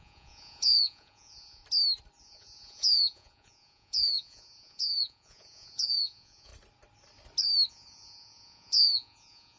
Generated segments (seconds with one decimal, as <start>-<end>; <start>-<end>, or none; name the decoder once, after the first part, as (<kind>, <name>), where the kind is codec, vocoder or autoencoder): 0.0-1.6 (vocoder, Vocos); 2.2-6.5; 7.7-9.6